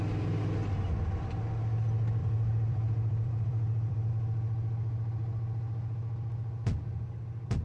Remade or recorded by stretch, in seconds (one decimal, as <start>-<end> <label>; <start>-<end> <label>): 0.0-2.2 recorded; 2.2-4.1 remade; 4.1-7.6 recorded